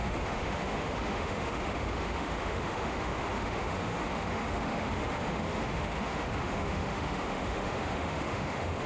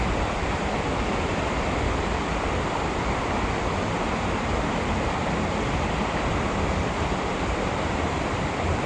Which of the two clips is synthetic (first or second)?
first